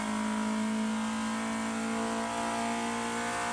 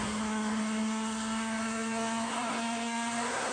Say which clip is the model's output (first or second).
second